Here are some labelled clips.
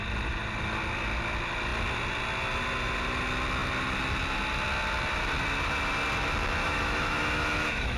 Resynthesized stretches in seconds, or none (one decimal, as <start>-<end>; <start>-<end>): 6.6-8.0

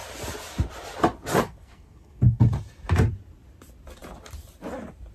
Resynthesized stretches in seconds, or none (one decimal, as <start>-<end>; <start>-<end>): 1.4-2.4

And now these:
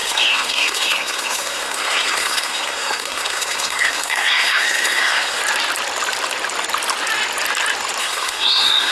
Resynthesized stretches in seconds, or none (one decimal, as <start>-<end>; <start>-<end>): 0.0-5.4; 8.0-8.9

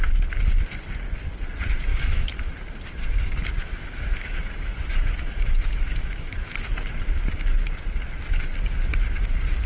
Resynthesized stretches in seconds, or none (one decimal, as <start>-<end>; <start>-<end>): 1.9-2.5; 3.6-6.7